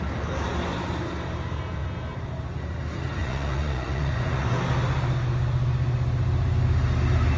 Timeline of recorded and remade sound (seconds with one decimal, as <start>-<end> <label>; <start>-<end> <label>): 0.0-3.2 recorded; 3.2-4.6 remade; 4.6-7.4 recorded